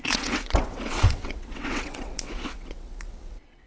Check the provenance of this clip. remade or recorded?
remade